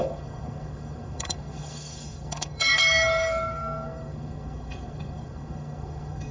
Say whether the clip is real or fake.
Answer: fake